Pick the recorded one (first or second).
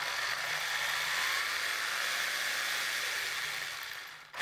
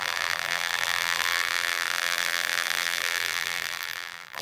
first